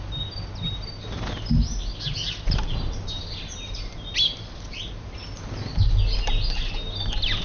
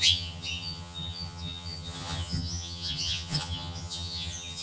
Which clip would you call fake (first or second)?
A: second